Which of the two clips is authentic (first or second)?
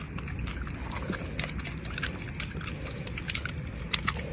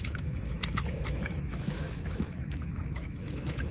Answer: first